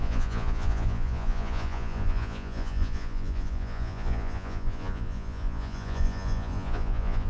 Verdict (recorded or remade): remade